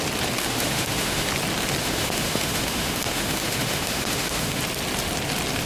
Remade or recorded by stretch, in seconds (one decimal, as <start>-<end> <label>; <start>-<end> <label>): 0.0-0.4 recorded; 0.4-1.3 remade; 1.3-1.8 recorded; 1.8-4.6 remade; 4.6-5.7 recorded